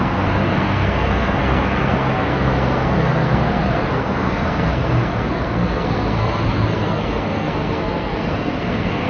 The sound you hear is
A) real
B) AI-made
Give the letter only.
B